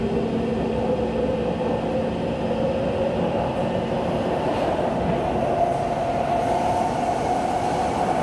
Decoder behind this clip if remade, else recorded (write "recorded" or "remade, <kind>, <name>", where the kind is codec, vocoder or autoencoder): recorded